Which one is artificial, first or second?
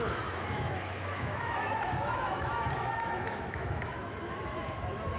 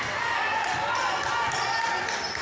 first